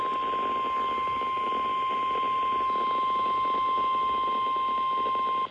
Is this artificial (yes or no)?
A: no